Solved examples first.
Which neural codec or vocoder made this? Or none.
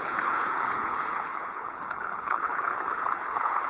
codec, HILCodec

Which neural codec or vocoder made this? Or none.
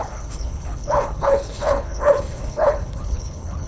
codec, HILCodec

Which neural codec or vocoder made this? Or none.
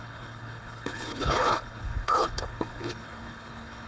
codec, HILCodec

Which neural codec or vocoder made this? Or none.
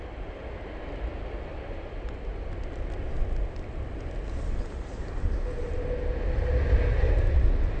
none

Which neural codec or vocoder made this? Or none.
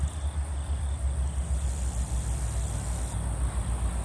none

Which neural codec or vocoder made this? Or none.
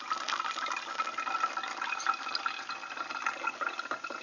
none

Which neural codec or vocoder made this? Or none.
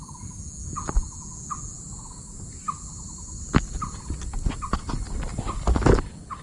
none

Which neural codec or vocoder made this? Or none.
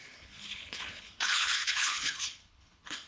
codec, HILCodec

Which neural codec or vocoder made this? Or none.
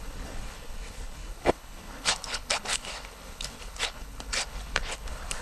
codec, HILCodec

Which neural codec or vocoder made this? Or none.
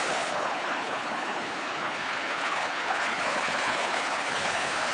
codec, HILCodec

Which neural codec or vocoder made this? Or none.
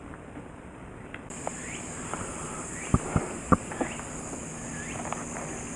none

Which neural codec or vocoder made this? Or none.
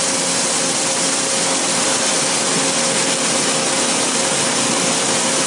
none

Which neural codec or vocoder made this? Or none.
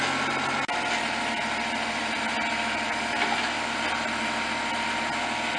none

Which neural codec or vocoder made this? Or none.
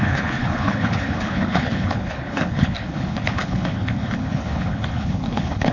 codec, HILCodec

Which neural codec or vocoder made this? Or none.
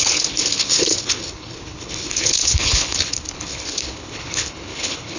codec, HILCodec